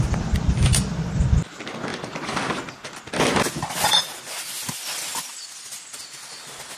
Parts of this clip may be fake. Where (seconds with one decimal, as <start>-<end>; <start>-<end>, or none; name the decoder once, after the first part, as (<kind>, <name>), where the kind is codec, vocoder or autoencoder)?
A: 1.9-2.4 (vocoder, BigVGAN v2)